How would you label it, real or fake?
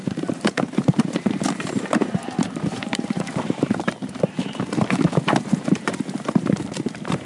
fake